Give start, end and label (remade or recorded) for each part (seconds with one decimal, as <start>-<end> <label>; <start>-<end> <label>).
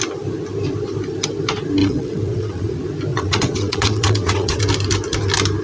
0.0-1.8 recorded; 1.8-2.7 remade; 2.7-3.1 recorded; 3.1-4.6 remade; 4.6-5.6 recorded